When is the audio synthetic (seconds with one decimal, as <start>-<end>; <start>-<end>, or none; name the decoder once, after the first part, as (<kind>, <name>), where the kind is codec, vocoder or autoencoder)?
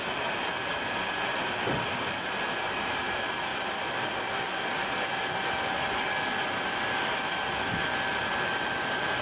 none